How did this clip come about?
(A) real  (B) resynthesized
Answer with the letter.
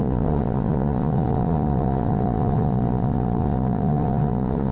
B